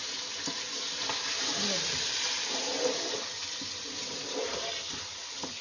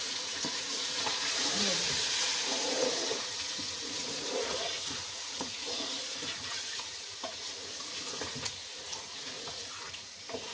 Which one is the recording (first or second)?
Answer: first